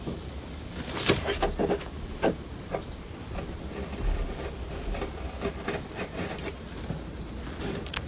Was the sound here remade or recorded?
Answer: recorded